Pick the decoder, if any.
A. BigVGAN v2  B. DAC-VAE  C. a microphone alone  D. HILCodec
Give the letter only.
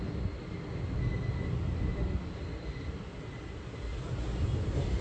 C